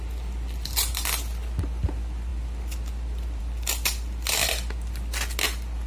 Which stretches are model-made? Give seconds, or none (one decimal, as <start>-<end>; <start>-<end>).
none